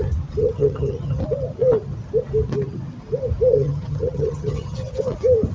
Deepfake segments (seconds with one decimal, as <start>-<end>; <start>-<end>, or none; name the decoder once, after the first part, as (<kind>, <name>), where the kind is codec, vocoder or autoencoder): 0.4-1.2 (vocoder, HiFi-GAN); 3.5-5.0